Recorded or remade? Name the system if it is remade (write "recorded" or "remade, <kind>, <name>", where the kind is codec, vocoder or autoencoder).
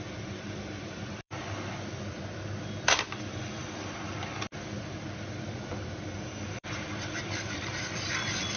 remade, vocoder, BigVGAN v2